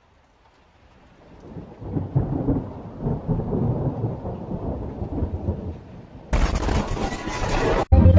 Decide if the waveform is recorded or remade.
recorded